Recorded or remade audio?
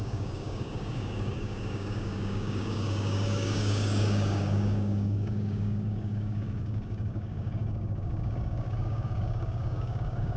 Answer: remade